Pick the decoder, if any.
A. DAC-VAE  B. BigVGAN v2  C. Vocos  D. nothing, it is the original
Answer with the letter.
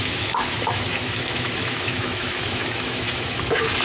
A